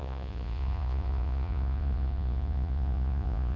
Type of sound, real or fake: fake